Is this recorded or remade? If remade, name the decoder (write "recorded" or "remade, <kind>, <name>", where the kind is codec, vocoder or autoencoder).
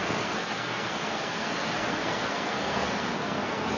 remade, codec, SNAC